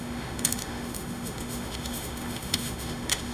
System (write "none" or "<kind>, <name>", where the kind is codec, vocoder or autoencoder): autoencoder, DAC-VAE